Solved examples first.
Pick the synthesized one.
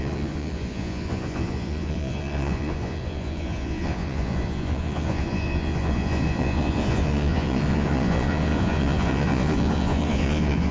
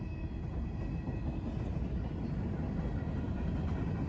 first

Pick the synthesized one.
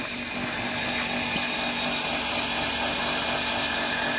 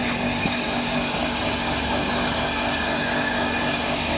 second